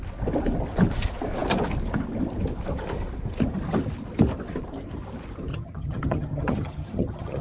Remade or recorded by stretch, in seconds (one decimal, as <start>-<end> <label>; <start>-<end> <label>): 0.0-5.5 recorded; 5.5-7.4 remade